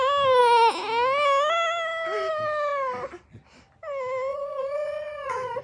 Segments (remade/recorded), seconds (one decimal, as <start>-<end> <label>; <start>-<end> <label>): 0.0-4.3 recorded; 4.3-5.6 remade